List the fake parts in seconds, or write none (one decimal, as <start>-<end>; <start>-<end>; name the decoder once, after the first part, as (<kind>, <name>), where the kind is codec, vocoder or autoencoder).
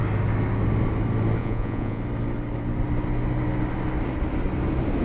1.4-2.0 (vocoder, Vocos)